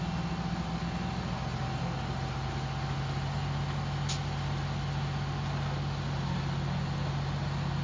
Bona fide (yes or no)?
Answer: yes